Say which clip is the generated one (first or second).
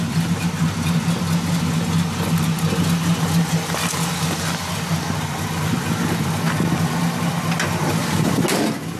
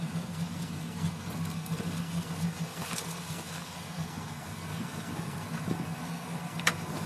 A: second